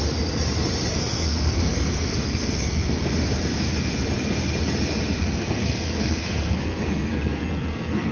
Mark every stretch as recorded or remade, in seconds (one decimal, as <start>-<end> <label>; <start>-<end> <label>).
0.0-0.9 recorded; 0.9-3.0 remade; 3.0-5.2 recorded; 5.2-8.1 remade